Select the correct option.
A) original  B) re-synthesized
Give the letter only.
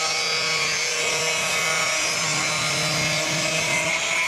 A